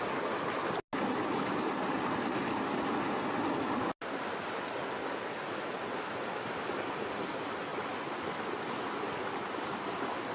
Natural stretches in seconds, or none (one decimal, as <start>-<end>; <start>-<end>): 0.0-10.3